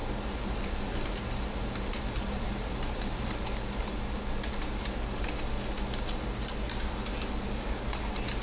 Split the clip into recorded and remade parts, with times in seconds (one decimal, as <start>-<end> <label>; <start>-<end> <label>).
0.0-3.4 remade; 3.4-8.4 recorded